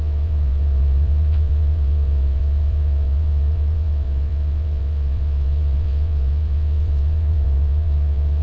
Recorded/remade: remade